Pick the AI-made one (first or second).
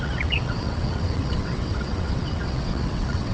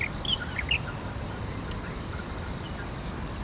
first